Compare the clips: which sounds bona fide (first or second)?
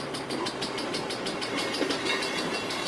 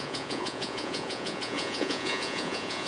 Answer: first